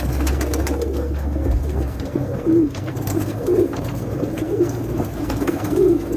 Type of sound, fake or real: fake